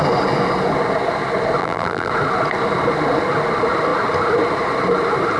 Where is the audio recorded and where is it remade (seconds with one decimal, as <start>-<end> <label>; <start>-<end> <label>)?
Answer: 0.0-1.6 recorded; 1.6-2.1 remade; 2.1-5.4 recorded